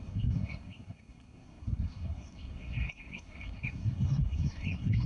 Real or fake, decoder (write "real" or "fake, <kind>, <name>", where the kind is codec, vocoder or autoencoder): fake, codec, SNAC